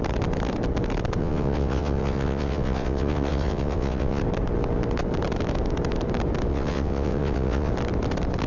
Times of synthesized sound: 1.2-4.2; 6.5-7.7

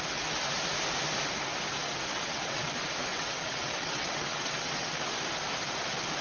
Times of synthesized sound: 2.1-2.7; 3.1-5.1

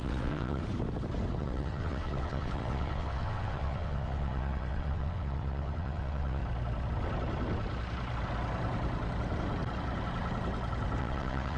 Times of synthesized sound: 0.0-0.6; 1.4-6.4; 11.0-11.6

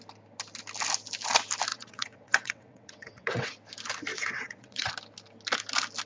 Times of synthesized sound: 1.7-3.5; 4.1-4.9

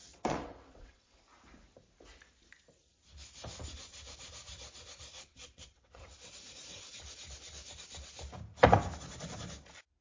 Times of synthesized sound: 0.0-1.2; 5.3-6.3

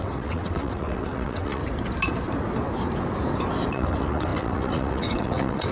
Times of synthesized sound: 0.0-1.6; 3.7-5.7

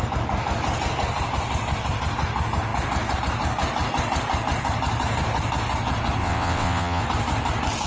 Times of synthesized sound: 6.2-7.0